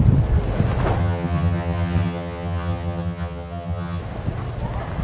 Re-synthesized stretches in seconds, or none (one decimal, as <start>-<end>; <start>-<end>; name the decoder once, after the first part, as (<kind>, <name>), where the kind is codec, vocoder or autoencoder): 1.0-4.0 (vocoder, HiFi-GAN)